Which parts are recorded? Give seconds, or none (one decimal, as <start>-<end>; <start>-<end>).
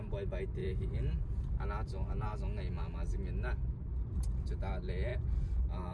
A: 0.0-0.6; 1.2-5.1